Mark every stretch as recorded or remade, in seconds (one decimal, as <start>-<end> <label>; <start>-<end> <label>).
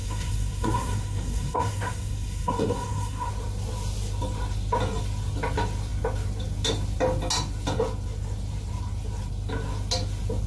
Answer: 0.0-3.3 remade; 3.3-10.5 recorded